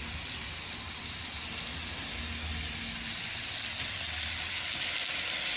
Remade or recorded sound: recorded